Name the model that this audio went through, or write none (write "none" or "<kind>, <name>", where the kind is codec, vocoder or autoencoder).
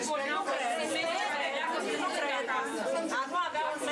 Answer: none